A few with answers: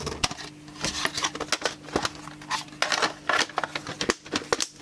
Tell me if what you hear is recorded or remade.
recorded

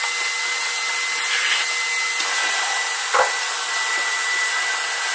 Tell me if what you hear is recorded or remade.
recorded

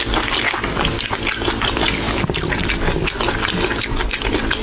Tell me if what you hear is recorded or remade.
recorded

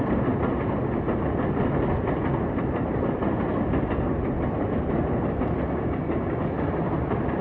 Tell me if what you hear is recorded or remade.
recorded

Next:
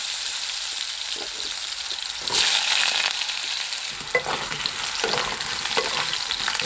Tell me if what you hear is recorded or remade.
recorded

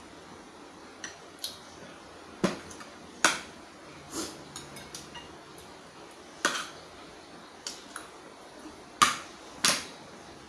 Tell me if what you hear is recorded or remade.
recorded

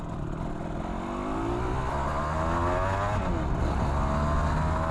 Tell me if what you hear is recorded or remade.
recorded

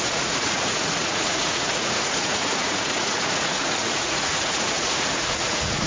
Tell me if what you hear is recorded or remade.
remade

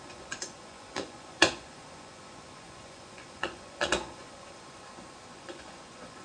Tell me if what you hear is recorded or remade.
remade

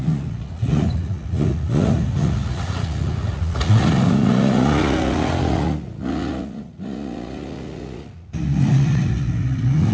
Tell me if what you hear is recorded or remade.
remade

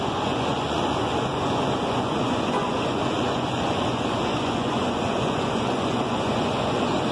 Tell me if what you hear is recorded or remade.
remade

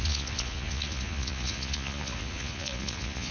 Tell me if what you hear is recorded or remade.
remade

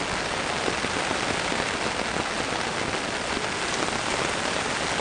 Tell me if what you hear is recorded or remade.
recorded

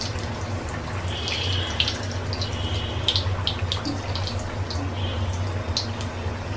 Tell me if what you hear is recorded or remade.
recorded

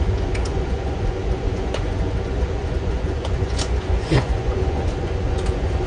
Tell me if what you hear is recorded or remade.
remade